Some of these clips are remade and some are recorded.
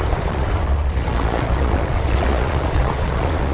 remade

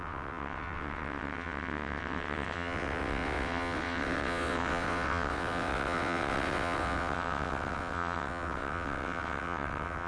remade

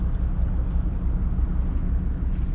recorded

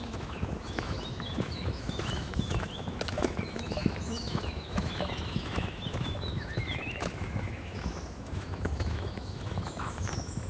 remade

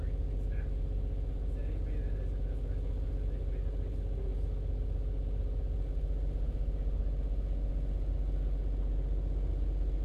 recorded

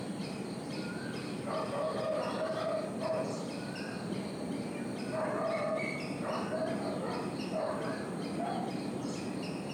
remade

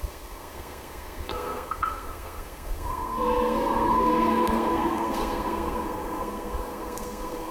remade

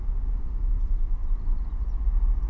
recorded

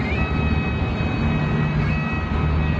recorded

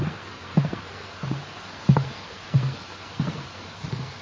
remade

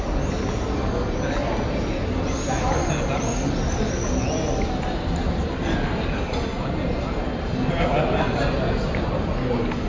recorded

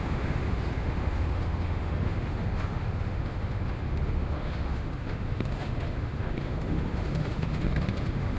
remade